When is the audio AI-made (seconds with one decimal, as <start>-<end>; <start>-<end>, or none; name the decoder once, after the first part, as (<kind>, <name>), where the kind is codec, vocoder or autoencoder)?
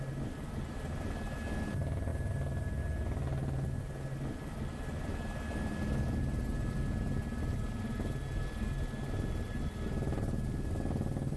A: none